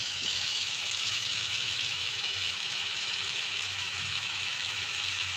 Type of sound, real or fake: fake